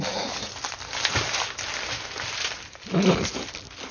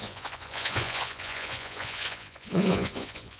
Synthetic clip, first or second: second